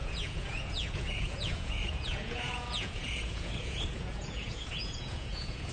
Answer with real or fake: fake